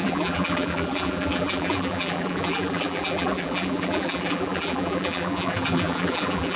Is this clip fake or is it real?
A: fake